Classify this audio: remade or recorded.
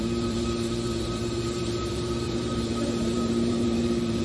remade